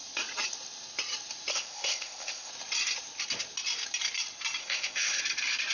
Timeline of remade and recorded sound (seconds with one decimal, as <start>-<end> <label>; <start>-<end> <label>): 0.0-1.5 recorded; 1.5-2.5 remade; 2.5-4.6 recorded; 4.6-5.2 remade; 5.2-5.7 recorded